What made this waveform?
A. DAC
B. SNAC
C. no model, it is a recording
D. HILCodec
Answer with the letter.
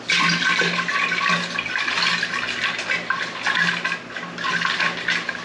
C